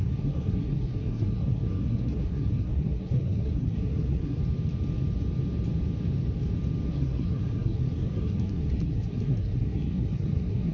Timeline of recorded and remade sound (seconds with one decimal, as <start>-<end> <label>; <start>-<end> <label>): 0.0-4.4 remade; 4.4-6.9 recorded; 6.9-10.7 remade